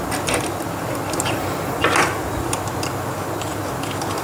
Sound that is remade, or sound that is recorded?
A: recorded